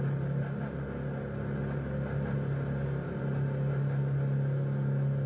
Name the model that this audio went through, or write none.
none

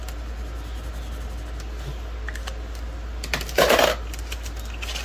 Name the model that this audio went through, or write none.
none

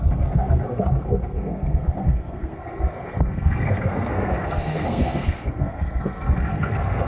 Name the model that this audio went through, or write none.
codec, SNAC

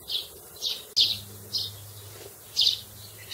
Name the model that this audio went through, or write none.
none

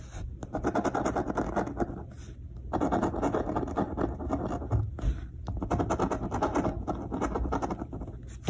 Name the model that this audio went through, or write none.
none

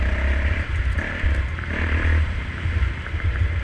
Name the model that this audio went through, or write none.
none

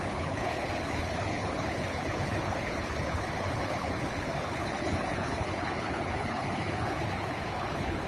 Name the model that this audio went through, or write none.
codec, HILCodec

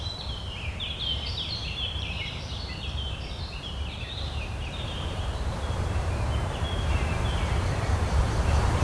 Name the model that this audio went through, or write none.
vocoder, BigVGAN v2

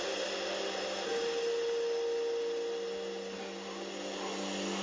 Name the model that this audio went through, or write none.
none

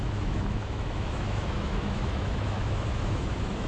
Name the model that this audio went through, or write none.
autoencoder, DAC-VAE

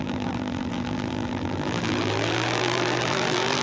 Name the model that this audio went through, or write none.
vocoder, BigVGAN v2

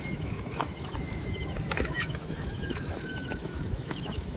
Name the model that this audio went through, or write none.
autoencoder, DAC-VAE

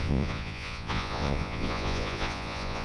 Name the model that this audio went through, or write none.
vocoder, Vocos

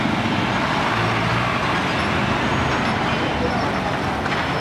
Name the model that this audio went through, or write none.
none